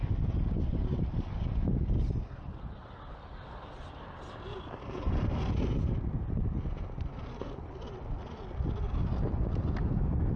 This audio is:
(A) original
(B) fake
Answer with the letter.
A